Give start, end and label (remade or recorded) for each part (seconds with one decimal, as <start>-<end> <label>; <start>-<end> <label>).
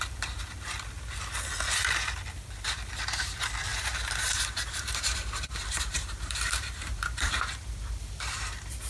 0.0-3.7 recorded; 3.7-7.3 remade; 7.3-8.9 recorded